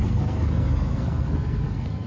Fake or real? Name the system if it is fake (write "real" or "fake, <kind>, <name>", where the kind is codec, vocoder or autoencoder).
fake, codec, SNAC